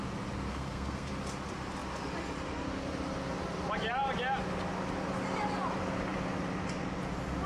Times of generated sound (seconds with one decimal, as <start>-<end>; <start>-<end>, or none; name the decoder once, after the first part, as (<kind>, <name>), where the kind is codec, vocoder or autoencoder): 0.5-1.1 (codec, SNAC)